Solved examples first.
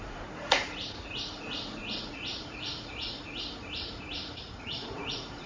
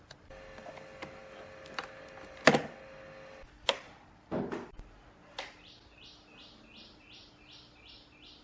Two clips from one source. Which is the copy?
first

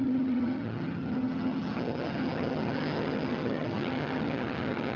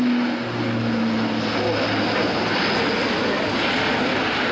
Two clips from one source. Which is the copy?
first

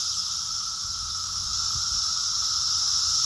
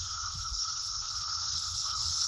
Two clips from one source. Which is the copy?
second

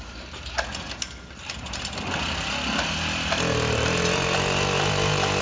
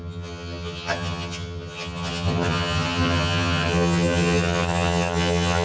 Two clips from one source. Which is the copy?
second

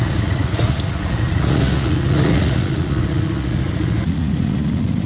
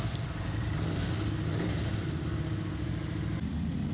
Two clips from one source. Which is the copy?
first